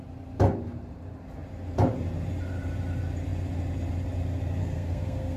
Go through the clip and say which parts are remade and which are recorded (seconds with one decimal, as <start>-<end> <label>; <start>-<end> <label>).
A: 0.0-4.6 recorded; 4.6-5.4 remade